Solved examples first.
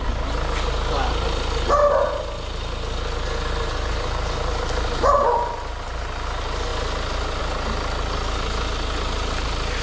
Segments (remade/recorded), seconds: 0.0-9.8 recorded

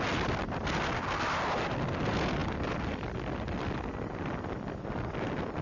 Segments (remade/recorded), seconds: 0.0-5.6 recorded

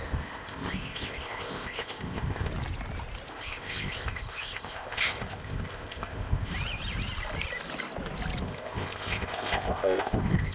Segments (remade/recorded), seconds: 0.0-2.5 remade; 2.5-3.3 recorded; 3.3-6.5 remade; 6.5-8.4 recorded; 8.4-10.5 remade

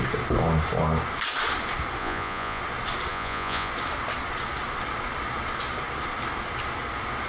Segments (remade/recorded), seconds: 0.0-2.0 recorded; 2.0-2.6 remade; 2.6-3.1 recorded; 3.1-3.7 remade; 3.7-7.3 recorded